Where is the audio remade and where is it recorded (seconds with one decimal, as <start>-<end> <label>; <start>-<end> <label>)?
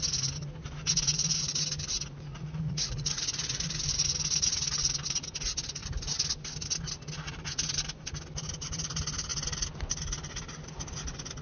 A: 0.0-2.3 recorded; 2.3-3.8 remade; 3.8-11.4 recorded